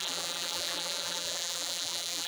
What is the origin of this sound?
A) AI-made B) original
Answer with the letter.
A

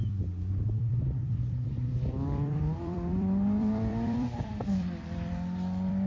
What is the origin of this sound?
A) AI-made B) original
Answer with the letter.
A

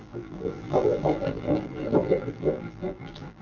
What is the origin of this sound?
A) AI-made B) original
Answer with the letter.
A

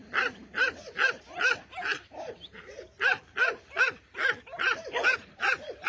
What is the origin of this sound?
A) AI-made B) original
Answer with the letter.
A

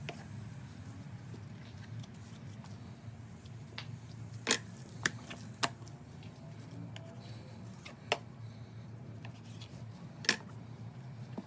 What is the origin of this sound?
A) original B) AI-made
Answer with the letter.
A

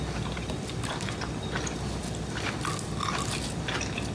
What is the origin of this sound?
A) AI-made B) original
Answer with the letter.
B